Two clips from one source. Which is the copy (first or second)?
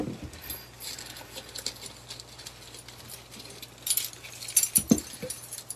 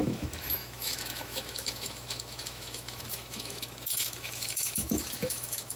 second